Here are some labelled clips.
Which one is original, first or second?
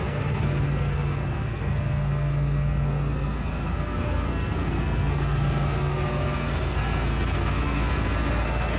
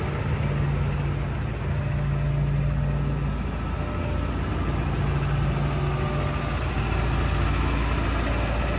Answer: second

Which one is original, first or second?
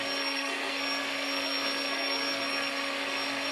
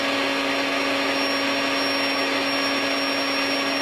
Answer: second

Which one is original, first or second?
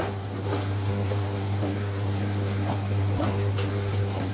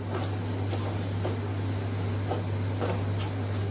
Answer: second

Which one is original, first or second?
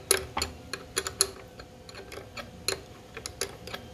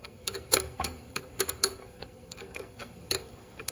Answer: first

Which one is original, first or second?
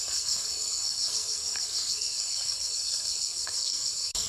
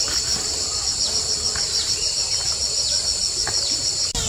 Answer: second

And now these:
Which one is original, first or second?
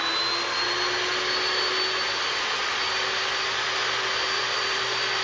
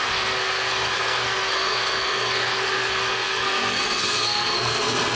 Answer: first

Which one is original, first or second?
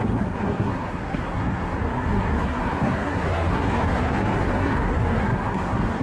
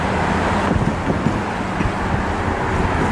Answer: second